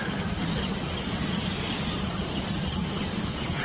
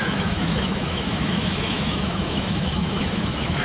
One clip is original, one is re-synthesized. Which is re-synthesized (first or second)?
second